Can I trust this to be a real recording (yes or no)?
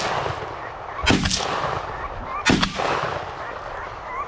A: yes